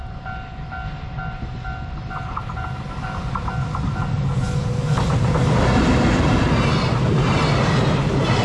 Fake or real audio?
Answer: real